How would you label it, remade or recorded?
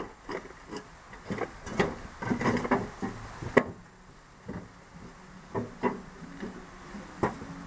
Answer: recorded